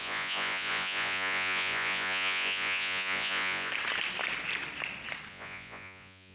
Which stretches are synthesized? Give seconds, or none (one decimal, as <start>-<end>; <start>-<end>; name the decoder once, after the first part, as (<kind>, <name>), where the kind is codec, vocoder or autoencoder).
0.0-3.7 (vocoder, Vocos); 5.3-6.3